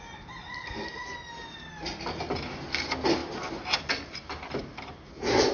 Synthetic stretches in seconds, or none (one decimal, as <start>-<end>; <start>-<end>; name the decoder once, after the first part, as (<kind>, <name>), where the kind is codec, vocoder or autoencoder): none